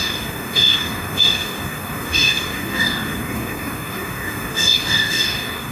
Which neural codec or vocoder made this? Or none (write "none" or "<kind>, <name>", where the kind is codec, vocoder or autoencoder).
codec, DAC